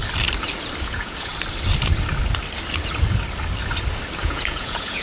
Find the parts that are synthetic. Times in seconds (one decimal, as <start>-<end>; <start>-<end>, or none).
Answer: 0.8-1.3; 4.2-5.0